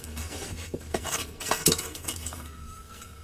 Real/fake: fake